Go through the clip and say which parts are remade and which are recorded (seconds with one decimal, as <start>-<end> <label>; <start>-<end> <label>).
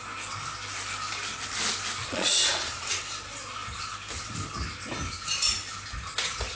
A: 0.0-2.0 recorded; 2.0-3.0 remade; 3.0-6.6 recorded